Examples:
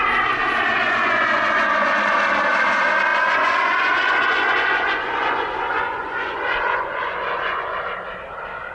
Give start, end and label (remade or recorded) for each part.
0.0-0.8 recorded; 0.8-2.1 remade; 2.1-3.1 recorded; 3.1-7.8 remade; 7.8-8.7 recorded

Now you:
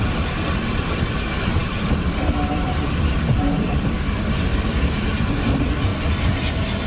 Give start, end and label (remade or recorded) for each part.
0.0-5.9 remade; 5.9-6.9 recorded

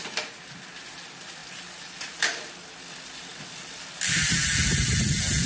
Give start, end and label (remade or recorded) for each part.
0.0-1.4 recorded; 1.4-2.5 remade; 2.5-5.5 recorded

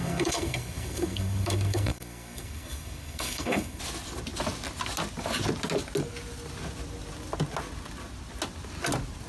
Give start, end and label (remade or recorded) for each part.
0.0-3.8 remade; 3.8-9.3 recorded

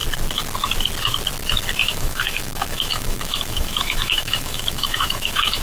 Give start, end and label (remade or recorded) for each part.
0.0-1.8 recorded; 1.8-5.6 remade

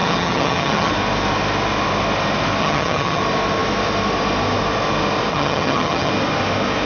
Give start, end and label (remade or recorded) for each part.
0.0-0.9 remade; 0.9-2.6 recorded; 2.6-3.2 remade; 3.2-5.3 recorded; 5.3-6.1 remade; 6.1-6.9 recorded

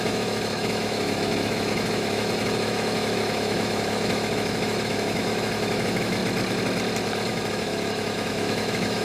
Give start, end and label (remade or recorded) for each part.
0.0-6.2 remade; 6.2-7.3 recorded; 7.3-9.0 remade